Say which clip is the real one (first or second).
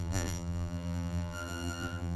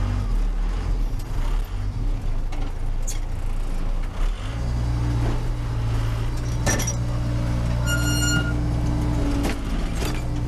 second